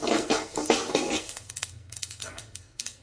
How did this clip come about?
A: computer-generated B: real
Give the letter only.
A